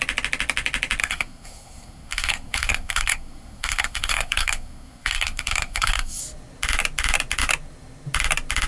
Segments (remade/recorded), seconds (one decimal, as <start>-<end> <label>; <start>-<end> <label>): 0.0-1.0 recorded; 1.0-6.2 remade; 6.2-8.7 recorded